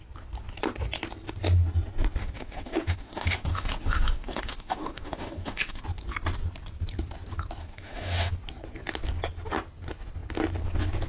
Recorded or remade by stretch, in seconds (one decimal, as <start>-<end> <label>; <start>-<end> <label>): 0.0-2.2 recorded; 2.2-5.8 remade; 5.8-7.6 recorded; 7.6-8.3 remade; 8.3-11.1 recorded